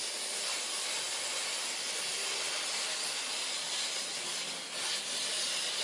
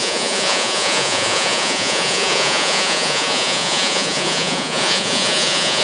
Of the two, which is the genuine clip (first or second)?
first